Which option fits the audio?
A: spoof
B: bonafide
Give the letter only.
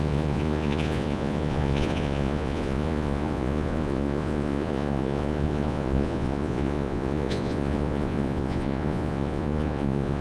A